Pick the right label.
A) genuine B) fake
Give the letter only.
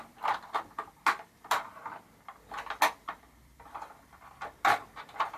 A